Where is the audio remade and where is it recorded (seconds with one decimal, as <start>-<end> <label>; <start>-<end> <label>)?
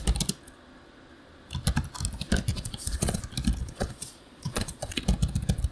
0.0-2.5 recorded; 2.5-3.2 remade; 3.2-3.6 recorded; 3.6-5.0 remade; 5.0-5.7 recorded